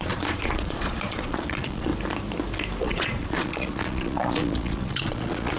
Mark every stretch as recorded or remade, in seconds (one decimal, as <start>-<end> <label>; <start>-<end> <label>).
0.0-1.9 remade; 1.9-2.8 recorded; 2.8-5.6 remade